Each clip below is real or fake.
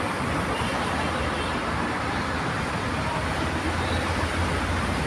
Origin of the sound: real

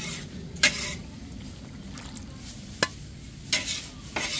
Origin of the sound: real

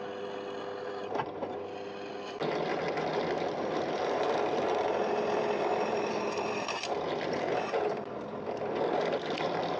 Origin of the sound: real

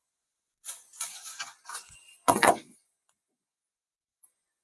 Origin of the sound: fake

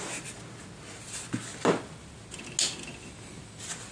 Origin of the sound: real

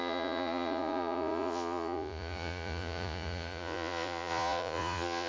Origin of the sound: fake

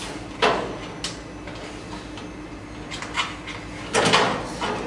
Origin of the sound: real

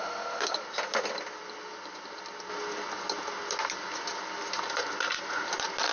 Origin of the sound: real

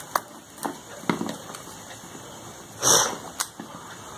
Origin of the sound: real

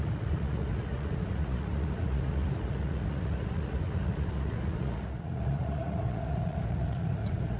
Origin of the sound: fake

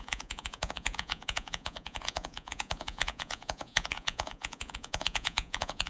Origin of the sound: fake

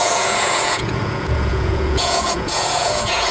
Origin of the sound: fake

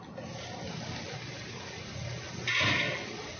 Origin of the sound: real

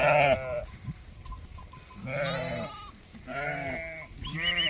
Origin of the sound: real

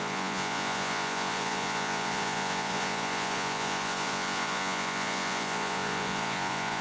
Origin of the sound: fake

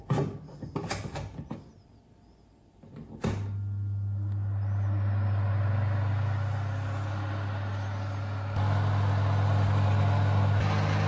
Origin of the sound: real